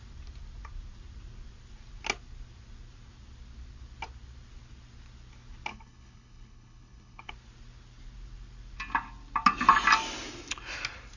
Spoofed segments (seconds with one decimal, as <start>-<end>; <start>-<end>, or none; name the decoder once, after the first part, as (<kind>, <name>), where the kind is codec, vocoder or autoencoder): 5.7-7.3 (codec, HILCodec)